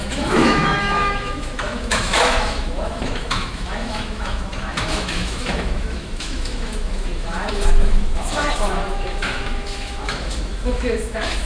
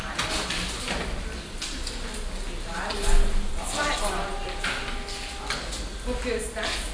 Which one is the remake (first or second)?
first